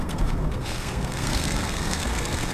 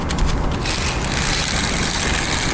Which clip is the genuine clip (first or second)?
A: second